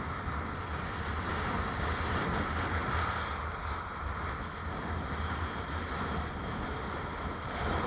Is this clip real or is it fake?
real